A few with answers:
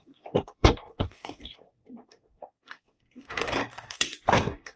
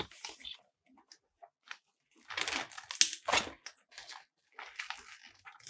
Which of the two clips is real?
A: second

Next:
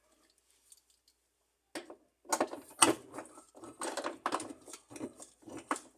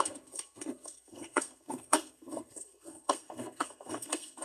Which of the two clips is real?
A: first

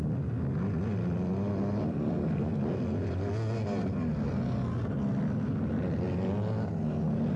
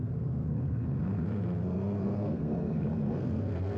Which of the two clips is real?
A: first